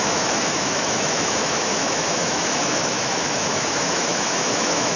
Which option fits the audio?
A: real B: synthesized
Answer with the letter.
B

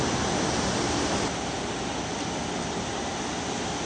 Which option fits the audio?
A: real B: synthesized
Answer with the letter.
A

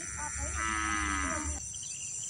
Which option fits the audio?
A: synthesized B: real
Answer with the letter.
B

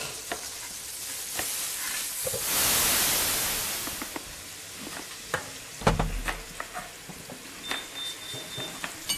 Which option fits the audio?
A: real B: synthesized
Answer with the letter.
A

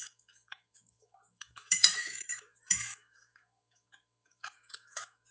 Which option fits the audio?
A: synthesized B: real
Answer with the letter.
A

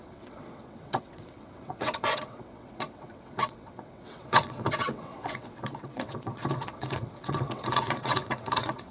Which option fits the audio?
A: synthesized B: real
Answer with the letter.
A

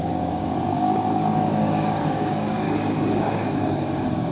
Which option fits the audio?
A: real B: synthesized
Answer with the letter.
B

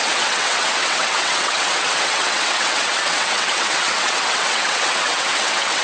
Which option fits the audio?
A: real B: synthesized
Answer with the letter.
B